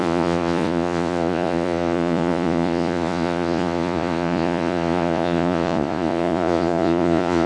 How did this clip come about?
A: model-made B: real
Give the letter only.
A